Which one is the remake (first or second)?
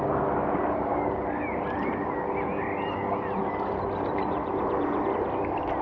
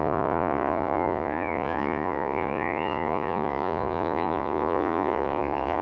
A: second